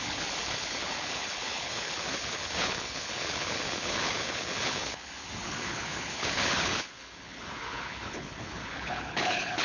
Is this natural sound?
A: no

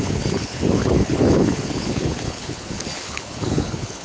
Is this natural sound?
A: no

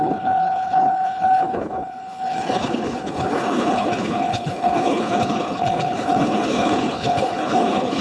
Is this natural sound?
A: no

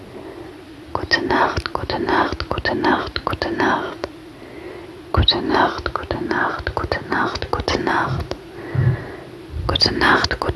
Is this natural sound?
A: yes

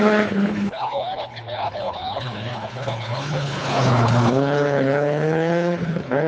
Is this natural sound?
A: no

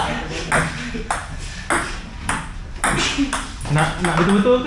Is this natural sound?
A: yes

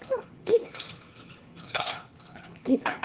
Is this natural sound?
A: no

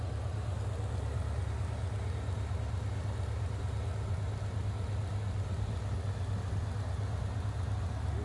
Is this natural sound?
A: yes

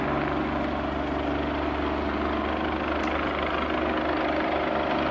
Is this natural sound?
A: yes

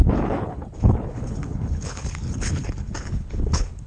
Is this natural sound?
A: no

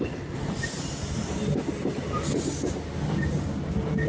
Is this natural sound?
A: yes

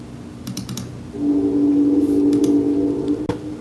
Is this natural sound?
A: yes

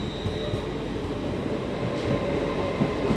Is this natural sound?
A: yes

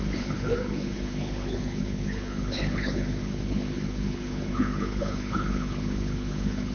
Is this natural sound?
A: no